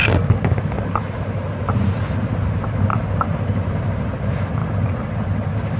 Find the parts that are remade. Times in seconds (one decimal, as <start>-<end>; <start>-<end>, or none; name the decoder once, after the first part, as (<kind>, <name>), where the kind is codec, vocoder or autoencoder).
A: none